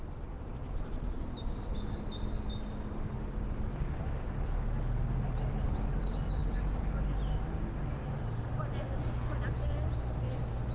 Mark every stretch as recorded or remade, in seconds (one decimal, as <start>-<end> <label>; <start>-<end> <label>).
0.0-10.7 recorded